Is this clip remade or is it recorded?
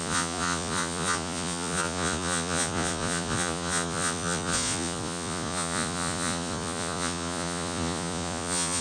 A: remade